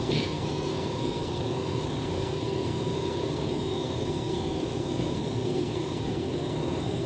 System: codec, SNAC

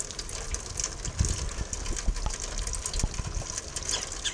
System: none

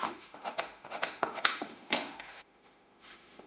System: autoencoder, DAC-VAE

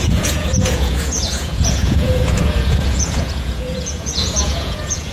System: vocoder, Vocos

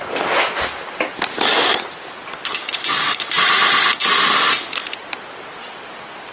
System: none